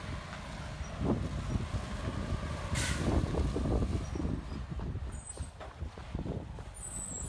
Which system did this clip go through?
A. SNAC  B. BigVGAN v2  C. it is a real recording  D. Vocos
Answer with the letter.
C